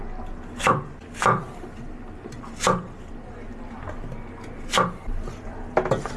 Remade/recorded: recorded